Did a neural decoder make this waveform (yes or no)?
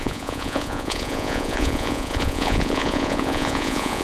yes